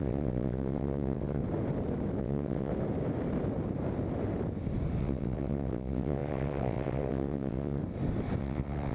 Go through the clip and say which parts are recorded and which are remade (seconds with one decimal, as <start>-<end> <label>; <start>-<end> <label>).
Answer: 0.0-1.4 remade; 1.4-2.2 recorded; 2.2-2.7 remade; 2.7-5.0 recorded; 5.0-7.8 remade; 7.8-8.4 recorded; 8.4-8.9 remade